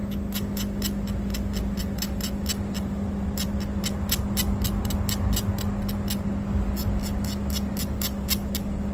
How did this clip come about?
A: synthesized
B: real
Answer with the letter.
B